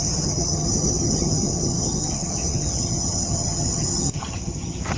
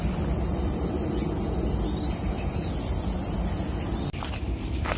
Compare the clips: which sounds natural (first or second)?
second